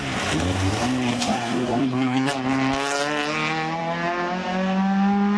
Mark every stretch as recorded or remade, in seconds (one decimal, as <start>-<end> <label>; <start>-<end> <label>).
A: 0.0-1.1 recorded; 1.1-2.3 remade; 2.3-5.4 recorded